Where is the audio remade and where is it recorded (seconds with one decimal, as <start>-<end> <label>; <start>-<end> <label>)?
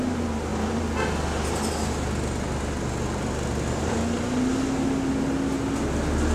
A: 0.0-6.3 recorded